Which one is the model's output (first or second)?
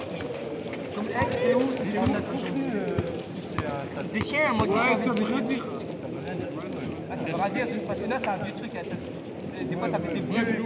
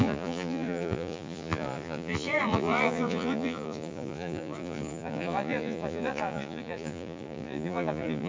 second